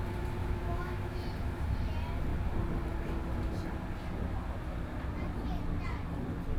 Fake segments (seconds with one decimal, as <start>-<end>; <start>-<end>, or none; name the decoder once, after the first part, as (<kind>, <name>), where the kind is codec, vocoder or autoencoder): 0.4-1.2 (autoencoder, DAC-VAE)